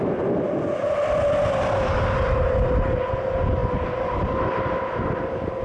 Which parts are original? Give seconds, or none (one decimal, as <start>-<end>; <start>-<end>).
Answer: 0.0-5.6

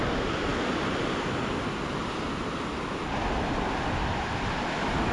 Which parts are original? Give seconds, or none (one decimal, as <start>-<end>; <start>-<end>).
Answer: 0.0-5.1

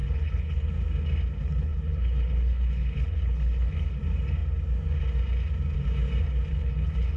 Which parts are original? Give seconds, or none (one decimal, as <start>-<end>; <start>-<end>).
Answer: 0.7-1.4; 4.0-6.5

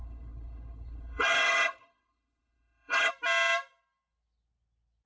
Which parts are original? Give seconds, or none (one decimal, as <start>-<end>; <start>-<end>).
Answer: 3.1-5.1